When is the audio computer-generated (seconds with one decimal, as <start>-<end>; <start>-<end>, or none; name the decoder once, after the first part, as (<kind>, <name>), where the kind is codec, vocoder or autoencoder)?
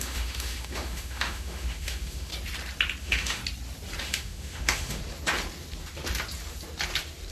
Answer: 0.0-2.3 (autoencoder, DAC-VAE); 3.0-3.4; 4.0-5.0